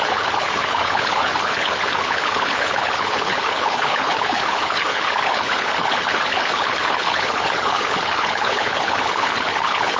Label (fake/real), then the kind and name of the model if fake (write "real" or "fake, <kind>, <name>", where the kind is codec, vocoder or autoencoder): fake, codec, HILCodec